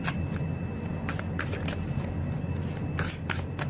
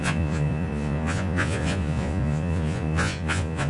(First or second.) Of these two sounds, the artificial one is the second